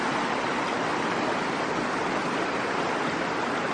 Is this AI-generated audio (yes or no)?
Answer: no